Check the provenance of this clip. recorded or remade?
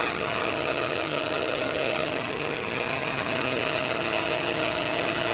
remade